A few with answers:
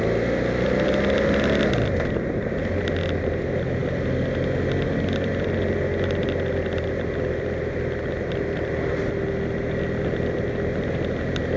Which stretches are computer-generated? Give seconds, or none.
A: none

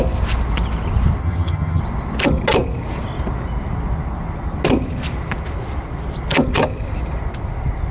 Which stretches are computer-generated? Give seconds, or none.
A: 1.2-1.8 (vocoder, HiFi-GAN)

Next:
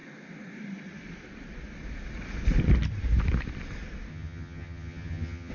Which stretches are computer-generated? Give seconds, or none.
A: 4.1-5.5 (vocoder, HiFi-GAN)

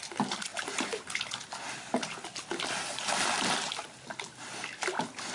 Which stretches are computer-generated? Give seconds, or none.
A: none

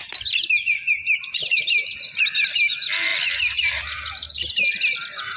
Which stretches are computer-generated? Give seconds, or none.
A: none

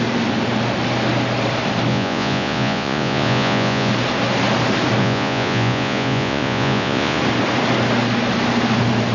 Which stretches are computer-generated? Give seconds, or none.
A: 1.9-3.9 (vocoder, Vocos); 5.0-7.2

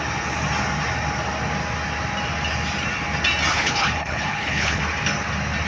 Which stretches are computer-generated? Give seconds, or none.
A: 3.5-4.8 (codec, HILCodec)

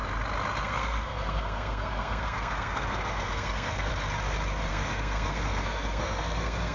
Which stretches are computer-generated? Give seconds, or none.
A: 0.6-3.9 (codec, SNAC); 4.7-6.7